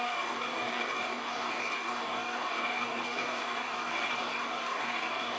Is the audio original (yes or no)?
no